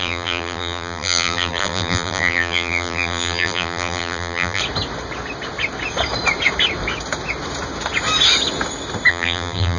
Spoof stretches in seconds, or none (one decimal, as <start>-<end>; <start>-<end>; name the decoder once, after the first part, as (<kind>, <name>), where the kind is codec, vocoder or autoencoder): 0.0-4.6 (vocoder, BigVGAN v2); 9.1-9.8

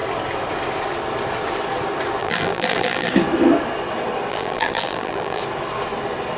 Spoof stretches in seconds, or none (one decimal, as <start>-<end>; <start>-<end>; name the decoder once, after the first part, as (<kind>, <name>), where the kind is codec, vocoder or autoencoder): 2.2-3.1 (vocoder, BigVGAN v2); 4.3-5.4

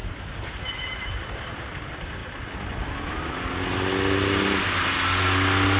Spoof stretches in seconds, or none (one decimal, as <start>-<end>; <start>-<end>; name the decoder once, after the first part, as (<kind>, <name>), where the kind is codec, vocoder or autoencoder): 0.0-1.8 (vocoder, BigVGAN v2)